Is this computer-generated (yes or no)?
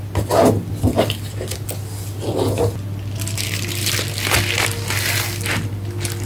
no